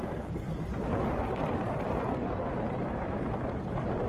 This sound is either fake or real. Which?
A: fake